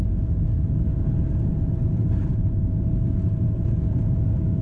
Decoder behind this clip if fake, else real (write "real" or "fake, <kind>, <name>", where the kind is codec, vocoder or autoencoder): fake, vocoder, Vocos